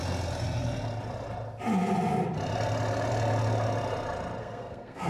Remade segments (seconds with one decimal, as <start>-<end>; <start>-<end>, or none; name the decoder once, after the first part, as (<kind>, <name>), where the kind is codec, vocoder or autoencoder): 4.4-5.1 (codec, SNAC)